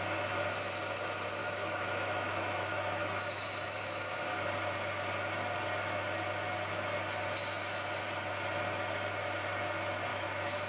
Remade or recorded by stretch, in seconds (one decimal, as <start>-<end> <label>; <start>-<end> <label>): 0.0-1.4 recorded; 1.4-4.2 remade; 4.2-10.1 recorded; 10.1-10.7 remade